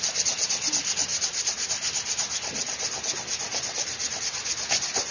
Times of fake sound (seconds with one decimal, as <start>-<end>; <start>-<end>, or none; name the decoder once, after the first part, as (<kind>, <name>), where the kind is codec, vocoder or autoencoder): none